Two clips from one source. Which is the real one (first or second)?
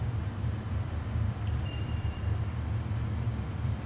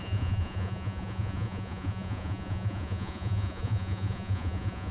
first